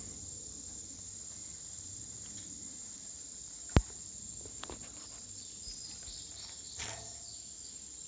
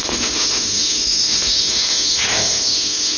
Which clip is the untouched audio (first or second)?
first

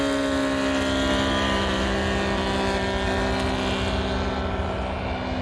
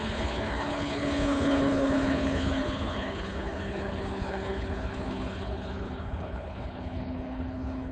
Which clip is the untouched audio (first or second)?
first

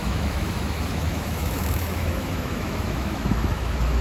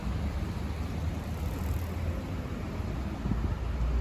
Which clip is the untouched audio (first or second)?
second